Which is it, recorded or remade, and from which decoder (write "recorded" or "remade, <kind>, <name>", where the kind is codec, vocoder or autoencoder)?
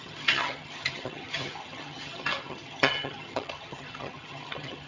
remade, vocoder, HiFi-GAN